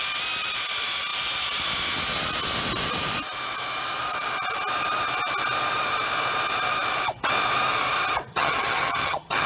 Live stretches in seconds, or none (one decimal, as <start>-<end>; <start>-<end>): 0.0-8.3